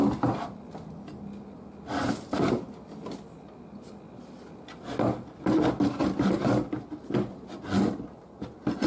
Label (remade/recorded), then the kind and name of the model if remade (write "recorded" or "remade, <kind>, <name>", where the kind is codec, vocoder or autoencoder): recorded